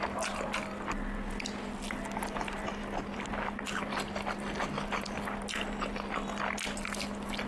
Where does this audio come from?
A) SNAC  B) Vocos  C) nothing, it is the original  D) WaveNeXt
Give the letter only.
C